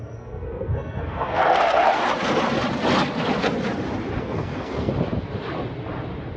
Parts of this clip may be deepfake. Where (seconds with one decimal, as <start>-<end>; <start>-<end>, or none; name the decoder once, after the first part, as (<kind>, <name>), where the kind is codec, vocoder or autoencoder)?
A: 0.0-2.0 (codec, SNAC); 4.2-4.9